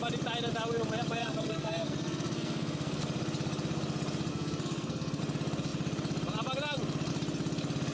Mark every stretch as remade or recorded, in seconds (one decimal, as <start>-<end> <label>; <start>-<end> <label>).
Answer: 0.0-1.2 recorded; 1.2-3.0 remade; 3.0-4.3 recorded; 4.3-5.2 remade; 5.2-7.9 recorded